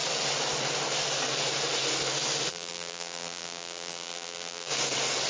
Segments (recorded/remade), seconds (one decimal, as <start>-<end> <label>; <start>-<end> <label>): 0.0-2.5 recorded; 2.5-4.7 remade; 4.7-5.3 recorded